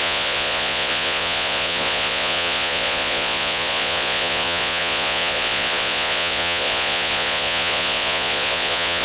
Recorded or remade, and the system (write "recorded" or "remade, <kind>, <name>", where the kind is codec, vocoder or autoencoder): remade, vocoder, Vocos